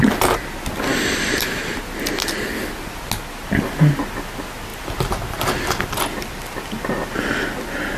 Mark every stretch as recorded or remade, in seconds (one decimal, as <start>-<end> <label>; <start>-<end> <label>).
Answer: 0.0-8.0 recorded